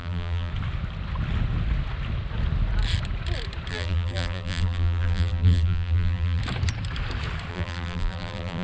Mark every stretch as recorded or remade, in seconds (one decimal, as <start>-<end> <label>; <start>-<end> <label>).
0.0-0.5 remade; 0.5-3.7 recorded; 3.7-6.4 remade; 6.4-7.5 recorded; 7.5-8.6 remade